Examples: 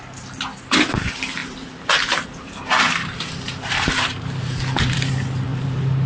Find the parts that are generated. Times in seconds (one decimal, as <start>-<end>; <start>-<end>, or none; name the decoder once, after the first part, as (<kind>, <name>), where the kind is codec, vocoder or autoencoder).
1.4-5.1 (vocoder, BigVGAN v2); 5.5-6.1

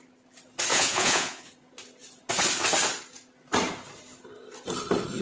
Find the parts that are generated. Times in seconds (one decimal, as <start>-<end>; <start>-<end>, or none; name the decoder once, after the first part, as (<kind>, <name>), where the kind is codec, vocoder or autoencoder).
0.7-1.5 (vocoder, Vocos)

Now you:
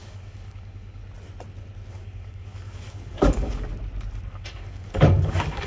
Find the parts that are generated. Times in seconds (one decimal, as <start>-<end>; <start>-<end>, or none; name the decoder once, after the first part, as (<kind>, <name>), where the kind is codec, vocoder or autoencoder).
0.0-1.0 (codec, DAC); 1.9-3.7; 4.3-5.7

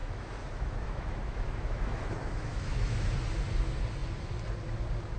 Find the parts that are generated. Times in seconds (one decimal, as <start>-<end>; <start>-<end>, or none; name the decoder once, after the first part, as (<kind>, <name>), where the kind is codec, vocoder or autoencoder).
0.0-3.1 (autoencoder, DAC-VAE)

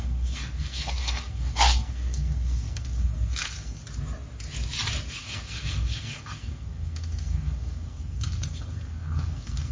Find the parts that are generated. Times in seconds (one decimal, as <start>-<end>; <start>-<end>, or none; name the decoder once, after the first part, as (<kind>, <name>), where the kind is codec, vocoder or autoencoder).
0.0-3.8 (codec, SNAC); 5.1-9.7

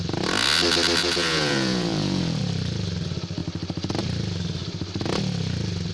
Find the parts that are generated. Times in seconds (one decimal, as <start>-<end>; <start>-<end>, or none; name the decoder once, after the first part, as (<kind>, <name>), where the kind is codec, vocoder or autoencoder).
1.0-2.4 (vocoder, Vocos)

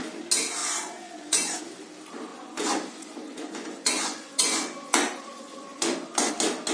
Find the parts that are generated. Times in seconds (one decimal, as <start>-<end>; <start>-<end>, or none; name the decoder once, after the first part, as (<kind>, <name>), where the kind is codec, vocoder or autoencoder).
0.6-1.6 (vocoder, Vocos); 2.3-6.3

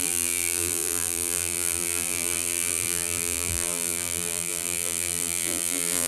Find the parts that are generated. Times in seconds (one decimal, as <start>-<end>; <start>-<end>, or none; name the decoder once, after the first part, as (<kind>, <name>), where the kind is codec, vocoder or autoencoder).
0.0-6.1 (vocoder, BigVGAN v2)